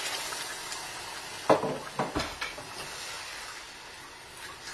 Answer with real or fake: real